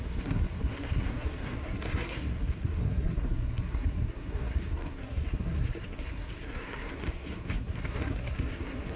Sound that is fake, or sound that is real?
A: fake